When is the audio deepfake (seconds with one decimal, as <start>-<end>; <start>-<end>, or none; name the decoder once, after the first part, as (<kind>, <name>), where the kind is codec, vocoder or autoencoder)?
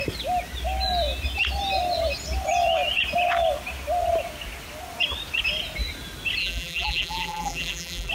6.4-8.1 (vocoder, BigVGAN v2)